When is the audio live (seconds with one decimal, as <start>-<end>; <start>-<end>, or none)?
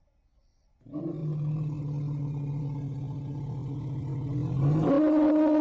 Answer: 0.0-5.6